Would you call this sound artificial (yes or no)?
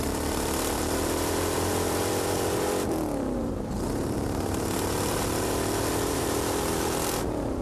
yes